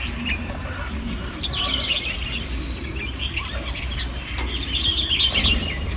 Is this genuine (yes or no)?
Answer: yes